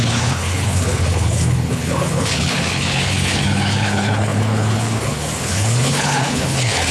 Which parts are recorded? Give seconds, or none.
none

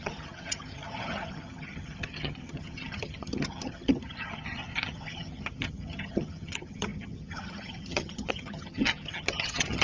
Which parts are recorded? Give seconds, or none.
none